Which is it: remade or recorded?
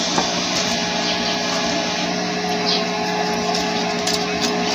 recorded